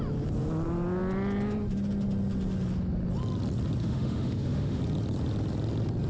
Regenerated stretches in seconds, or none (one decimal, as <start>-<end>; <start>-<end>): 3.8-4.8